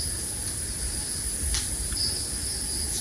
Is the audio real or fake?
real